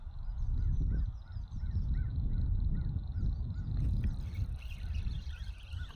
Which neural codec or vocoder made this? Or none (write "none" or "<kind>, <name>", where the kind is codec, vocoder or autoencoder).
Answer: none